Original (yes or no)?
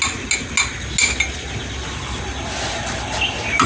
yes